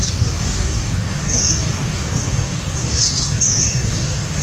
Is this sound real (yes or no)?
no